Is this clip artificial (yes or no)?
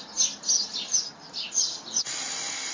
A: no